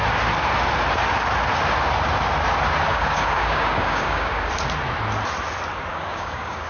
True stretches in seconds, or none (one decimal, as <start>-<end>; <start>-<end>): 0.0-2.9; 4.5-5.9